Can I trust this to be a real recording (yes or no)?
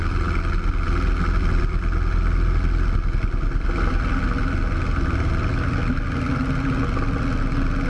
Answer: yes